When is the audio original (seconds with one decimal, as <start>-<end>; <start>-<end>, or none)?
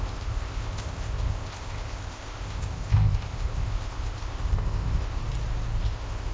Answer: 5.2-5.8